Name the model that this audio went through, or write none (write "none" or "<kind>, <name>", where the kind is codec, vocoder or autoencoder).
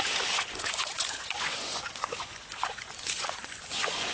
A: vocoder, Vocos